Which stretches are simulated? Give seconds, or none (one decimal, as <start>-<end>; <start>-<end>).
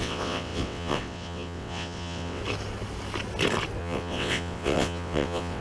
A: 0.0-2.4; 3.8-5.6